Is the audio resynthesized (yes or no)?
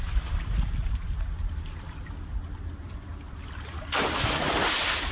no